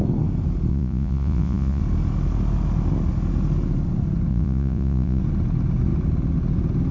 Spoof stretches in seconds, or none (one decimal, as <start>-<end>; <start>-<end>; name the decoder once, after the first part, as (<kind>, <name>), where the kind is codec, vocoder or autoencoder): 0.7-1.8 (vocoder, Vocos); 4.3-5.2